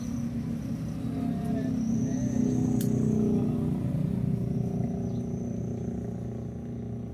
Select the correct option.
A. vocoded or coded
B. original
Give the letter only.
B